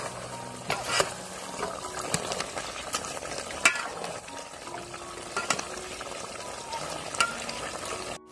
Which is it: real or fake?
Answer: real